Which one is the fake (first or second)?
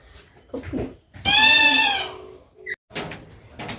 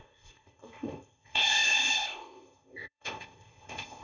second